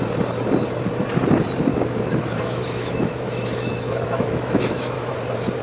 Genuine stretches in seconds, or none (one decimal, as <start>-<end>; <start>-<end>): 0.0-1.7; 5.1-5.6